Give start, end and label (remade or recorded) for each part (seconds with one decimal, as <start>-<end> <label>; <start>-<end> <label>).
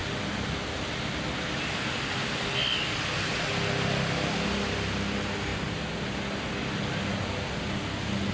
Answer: 0.0-8.3 recorded